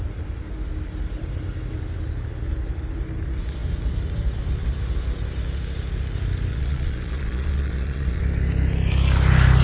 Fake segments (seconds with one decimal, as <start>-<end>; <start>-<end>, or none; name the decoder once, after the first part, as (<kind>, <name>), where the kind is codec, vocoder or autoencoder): 6.5-8.2 (vocoder, Vocos)